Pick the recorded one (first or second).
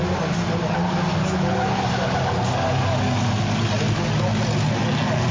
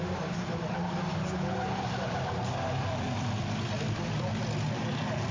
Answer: first